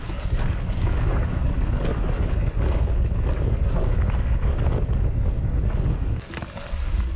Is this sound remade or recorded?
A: remade